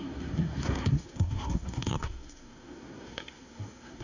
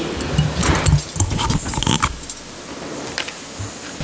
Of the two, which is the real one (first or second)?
second